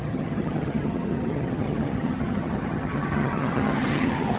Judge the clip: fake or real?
fake